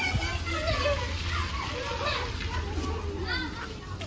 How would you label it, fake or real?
real